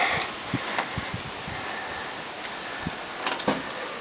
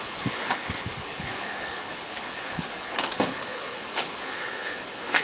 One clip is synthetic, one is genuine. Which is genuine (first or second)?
first